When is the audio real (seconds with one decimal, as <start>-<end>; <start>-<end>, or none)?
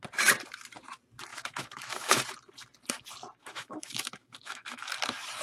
0.0-1.3; 2.2-3.4; 4.9-5.4